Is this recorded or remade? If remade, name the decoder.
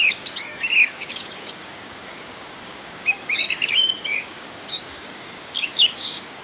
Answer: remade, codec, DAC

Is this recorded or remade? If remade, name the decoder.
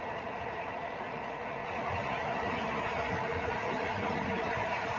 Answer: remade, vocoder, Vocos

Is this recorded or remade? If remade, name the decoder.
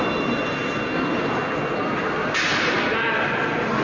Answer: recorded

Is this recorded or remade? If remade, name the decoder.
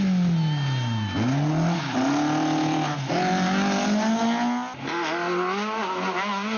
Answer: recorded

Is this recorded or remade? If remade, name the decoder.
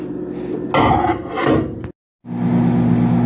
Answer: recorded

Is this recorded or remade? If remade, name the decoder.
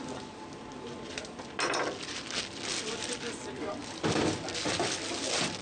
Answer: recorded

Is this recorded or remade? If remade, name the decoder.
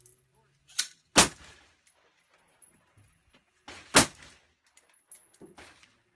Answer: recorded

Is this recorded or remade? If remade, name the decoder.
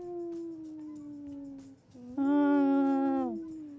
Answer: recorded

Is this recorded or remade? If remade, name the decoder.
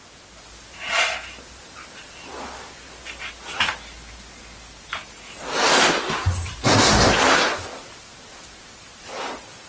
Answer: recorded